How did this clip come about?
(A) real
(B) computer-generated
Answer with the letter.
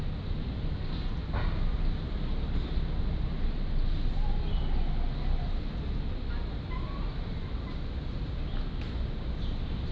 A